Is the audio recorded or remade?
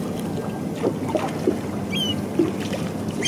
recorded